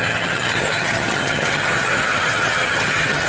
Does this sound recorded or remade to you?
remade